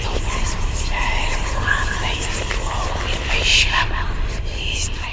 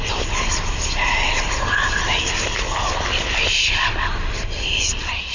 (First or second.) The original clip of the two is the second